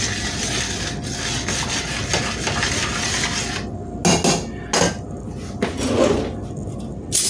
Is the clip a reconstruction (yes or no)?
no